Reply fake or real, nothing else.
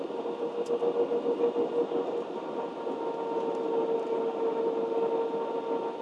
real